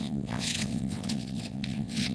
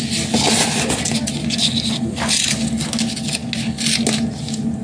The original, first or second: second